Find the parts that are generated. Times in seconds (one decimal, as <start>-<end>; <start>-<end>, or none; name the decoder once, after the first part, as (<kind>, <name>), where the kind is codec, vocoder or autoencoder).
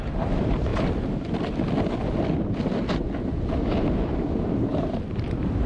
0.0-0.7 (vocoder, BigVGAN v2); 4.1-5.7